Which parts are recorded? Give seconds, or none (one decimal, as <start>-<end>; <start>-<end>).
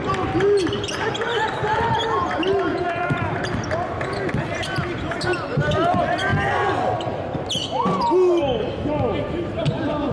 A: 0.0-2.7; 3.2-10.1